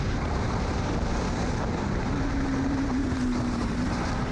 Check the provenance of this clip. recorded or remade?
remade